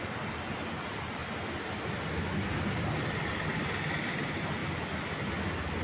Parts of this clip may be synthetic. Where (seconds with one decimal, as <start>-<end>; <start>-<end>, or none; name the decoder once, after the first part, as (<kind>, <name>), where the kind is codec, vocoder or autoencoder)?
none